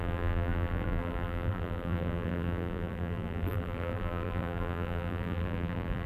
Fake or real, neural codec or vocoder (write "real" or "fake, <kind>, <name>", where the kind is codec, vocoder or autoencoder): fake, vocoder, BigVGAN v2